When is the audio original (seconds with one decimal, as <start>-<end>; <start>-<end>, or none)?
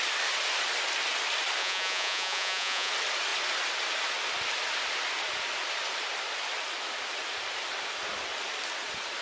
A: 0.0-1.6; 2.9-9.2